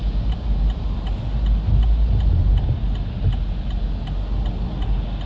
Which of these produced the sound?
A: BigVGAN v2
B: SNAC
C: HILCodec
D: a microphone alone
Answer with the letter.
D